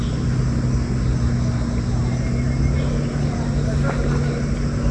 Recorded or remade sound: recorded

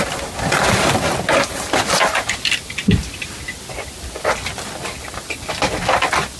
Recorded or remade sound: recorded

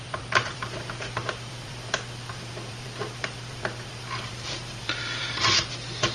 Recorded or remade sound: remade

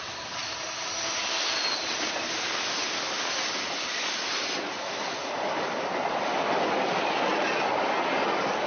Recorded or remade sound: recorded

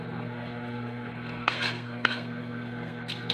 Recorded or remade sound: remade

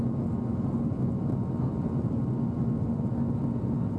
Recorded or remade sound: recorded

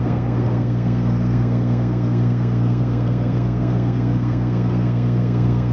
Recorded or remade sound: remade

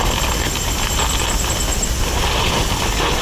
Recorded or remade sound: recorded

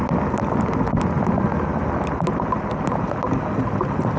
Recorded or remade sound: recorded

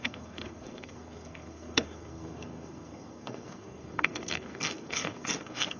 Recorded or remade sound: remade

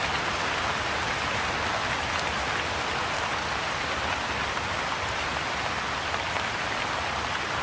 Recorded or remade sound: recorded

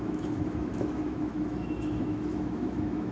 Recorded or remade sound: remade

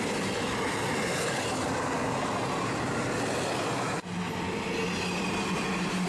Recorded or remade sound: recorded